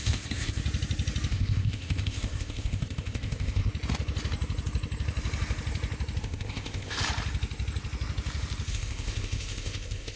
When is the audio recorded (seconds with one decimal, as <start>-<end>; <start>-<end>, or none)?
0.6-1.3; 3.7-6.2; 7.0-8.7

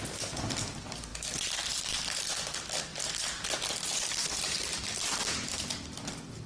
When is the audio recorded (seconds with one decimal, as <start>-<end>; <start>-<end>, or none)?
1.1-2.3; 2.9-5.8

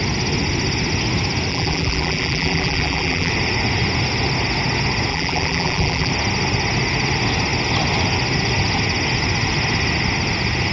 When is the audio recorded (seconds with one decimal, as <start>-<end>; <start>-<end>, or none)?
0.0-1.5; 3.3-5.1; 6.1-10.7

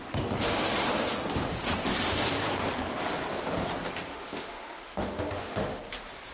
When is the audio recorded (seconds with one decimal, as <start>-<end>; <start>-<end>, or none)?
0.0-4.1; 5.8-6.3

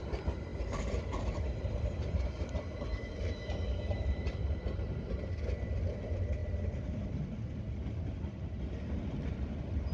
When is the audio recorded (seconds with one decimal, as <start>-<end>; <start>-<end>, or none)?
0.0-0.5; 5.3-9.9

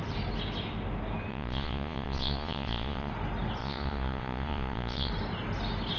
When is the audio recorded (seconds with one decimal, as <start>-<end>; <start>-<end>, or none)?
0.0-1.3; 3.1-3.6; 5.1-6.0